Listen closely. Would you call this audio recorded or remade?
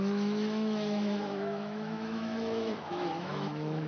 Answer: remade